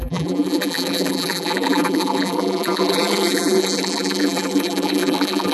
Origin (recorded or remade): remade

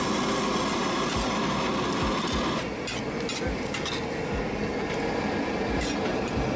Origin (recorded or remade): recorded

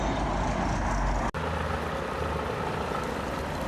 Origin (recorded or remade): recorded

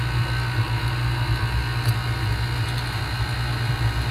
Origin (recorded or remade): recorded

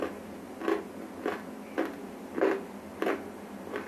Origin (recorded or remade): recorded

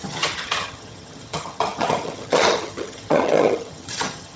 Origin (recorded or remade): remade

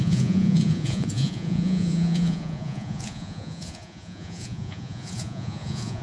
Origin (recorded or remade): remade